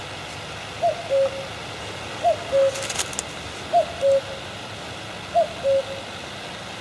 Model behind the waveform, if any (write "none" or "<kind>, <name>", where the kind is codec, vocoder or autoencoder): none